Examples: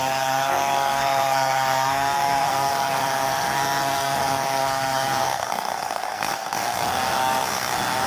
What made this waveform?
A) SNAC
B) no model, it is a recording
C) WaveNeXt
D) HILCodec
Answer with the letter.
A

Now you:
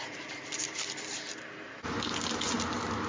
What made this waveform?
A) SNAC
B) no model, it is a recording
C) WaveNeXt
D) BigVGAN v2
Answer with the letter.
B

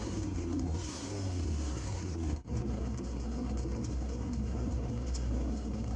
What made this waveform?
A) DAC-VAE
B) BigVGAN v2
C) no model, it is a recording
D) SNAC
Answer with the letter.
D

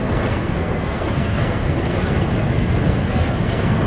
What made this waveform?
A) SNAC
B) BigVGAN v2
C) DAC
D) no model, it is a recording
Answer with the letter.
A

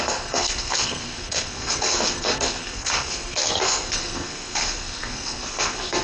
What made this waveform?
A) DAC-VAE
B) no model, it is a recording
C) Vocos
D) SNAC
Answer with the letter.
D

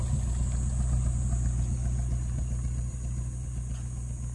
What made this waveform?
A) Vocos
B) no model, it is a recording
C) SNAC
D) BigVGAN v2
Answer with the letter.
B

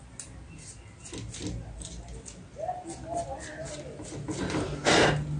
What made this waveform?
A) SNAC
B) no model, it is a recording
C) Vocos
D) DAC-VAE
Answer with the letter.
B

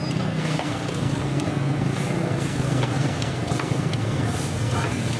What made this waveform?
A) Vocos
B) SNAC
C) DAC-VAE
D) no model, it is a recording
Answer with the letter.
B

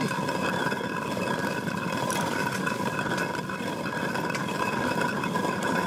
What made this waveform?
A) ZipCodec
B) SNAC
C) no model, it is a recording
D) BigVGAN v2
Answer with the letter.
C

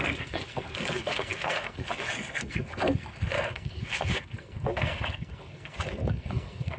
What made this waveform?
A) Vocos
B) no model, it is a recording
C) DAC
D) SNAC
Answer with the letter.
D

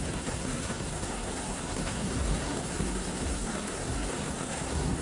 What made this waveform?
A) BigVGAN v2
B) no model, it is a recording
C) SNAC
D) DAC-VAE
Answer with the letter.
C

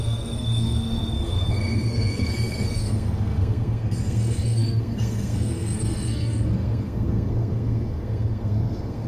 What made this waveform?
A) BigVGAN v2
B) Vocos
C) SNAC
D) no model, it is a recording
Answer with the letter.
C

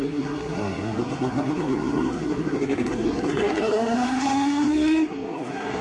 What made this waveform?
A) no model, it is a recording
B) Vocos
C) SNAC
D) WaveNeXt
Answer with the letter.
C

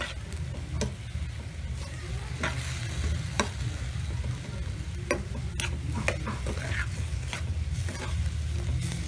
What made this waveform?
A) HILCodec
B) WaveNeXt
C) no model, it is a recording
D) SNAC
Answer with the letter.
C